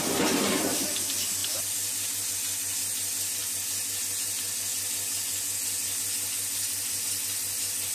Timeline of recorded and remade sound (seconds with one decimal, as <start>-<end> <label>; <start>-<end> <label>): 0.0-1.4 recorded; 1.4-2.3 remade; 2.3-7.9 recorded